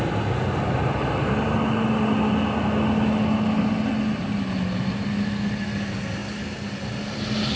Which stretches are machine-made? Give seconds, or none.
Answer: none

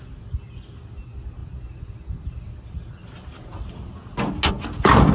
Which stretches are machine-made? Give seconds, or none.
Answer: none